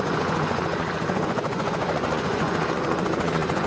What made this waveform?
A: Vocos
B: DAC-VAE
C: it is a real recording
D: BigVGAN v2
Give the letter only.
A